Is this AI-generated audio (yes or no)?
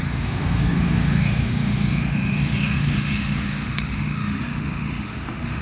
yes